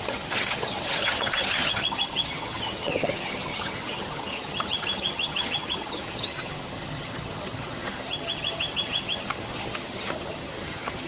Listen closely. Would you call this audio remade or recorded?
remade